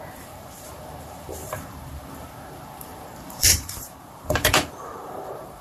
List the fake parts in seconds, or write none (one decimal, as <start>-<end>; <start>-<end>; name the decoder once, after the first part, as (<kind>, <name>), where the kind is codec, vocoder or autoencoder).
0.0-5.6 (vocoder, BigVGAN v2)